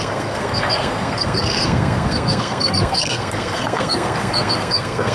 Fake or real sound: fake